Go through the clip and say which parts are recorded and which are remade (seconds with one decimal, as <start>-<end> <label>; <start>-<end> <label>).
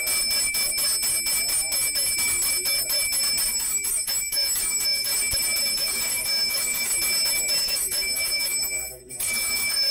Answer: 0.0-3.5 recorded; 3.5-5.1 remade; 5.1-5.7 recorded; 5.7-6.9 remade; 6.9-7.6 recorded; 7.6-9.9 remade